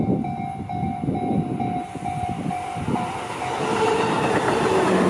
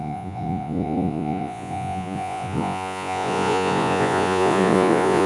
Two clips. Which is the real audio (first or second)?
first